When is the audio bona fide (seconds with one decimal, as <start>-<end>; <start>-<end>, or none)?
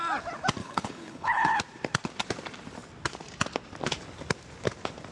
0.0-0.6; 1.6-5.1